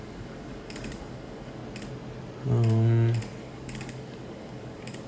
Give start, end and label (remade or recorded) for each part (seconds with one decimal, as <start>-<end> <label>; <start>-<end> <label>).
0.0-1.6 remade; 1.6-3.4 recorded; 3.4-5.1 remade